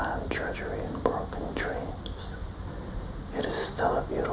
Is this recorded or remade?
recorded